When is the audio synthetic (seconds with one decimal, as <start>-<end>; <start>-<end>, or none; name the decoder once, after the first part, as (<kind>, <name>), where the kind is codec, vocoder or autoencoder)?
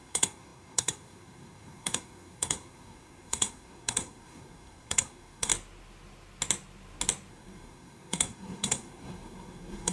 0.0-5.5 (codec, SNAC); 7.3-9.9